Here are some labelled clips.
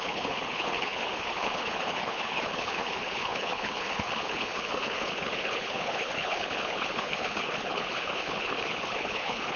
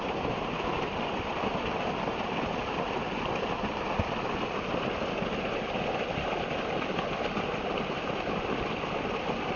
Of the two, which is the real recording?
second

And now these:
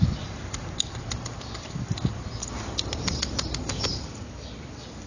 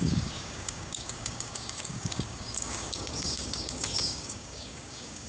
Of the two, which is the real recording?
first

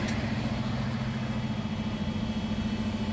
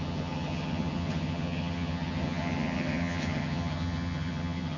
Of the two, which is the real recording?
first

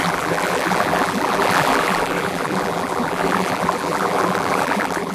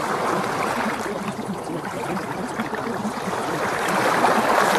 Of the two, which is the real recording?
second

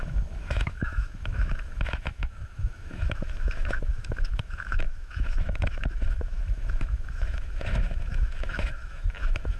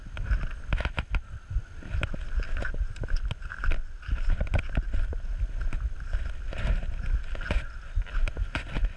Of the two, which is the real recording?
second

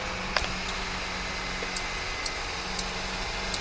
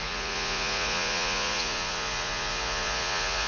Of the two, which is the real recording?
first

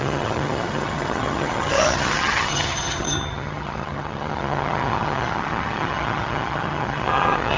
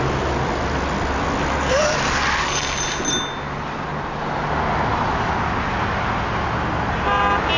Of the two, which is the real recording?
second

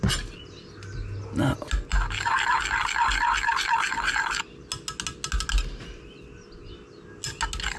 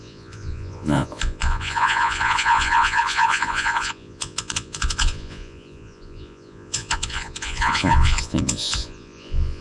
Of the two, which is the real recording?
first